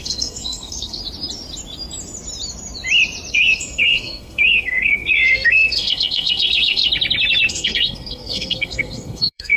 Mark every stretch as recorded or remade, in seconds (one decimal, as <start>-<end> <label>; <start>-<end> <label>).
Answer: 0.0-1.0 remade; 1.0-3.3 recorded; 3.3-6.8 remade; 6.8-7.5 recorded; 7.5-9.6 remade